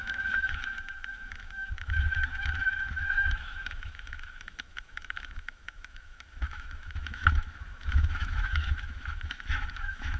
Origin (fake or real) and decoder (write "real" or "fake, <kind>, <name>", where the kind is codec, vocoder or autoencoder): fake, autoencoder, DAC-VAE